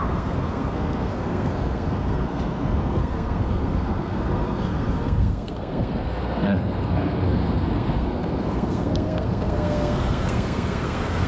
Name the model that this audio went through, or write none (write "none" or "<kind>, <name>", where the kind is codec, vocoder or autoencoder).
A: codec, SNAC